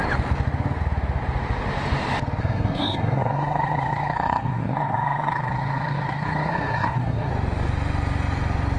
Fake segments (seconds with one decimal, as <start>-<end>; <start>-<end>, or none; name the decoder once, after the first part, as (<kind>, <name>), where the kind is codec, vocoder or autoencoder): 2.4-7.3 (codec, SNAC)